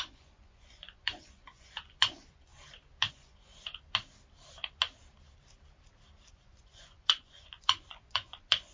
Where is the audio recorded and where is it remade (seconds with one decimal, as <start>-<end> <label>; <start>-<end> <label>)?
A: 0.0-2.5 remade; 2.5-3.1 recorded; 3.1-3.5 remade; 3.5-6.3 recorded; 6.3-8.7 remade